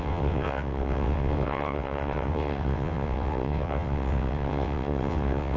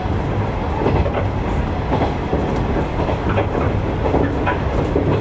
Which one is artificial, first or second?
first